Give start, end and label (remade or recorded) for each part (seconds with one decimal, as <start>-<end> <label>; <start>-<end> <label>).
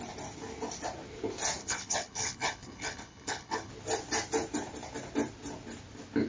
0.0-1.6 recorded; 1.6-3.7 remade; 3.7-6.3 recorded